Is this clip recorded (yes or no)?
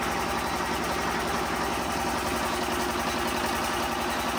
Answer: yes